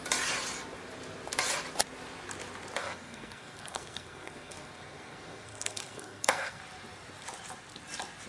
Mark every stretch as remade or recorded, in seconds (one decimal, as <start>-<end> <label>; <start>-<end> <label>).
0.0-2.8 recorded; 2.8-6.6 remade; 6.6-8.3 recorded